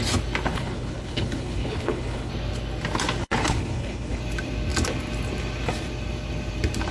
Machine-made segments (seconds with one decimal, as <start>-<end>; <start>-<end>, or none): 0.5-2.3; 3.2-4.2

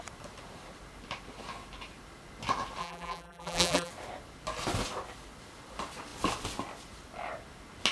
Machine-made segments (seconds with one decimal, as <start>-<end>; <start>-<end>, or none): 2.8-3.9

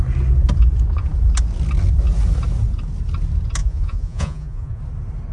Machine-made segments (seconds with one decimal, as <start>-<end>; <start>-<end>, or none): 3.6-4.8

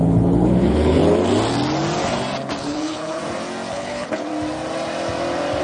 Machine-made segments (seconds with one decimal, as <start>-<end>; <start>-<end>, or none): 0.0-1.0; 2.6-3.2; 3.7-4.3

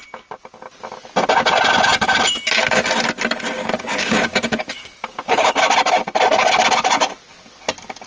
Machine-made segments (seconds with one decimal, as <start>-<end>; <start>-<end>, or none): 3.6-5.6

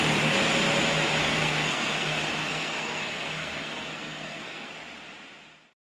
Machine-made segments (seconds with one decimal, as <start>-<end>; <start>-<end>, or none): 1.2-4.7

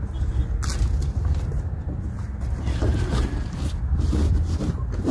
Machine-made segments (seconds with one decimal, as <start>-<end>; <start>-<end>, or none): none

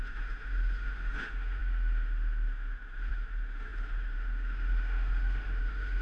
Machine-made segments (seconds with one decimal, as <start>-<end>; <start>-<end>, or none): 0.0-6.0